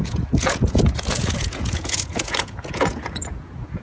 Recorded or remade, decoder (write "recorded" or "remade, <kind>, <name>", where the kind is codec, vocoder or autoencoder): remade, vocoder, Vocos